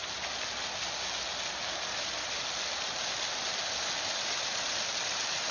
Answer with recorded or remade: recorded